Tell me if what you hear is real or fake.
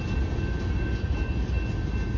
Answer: real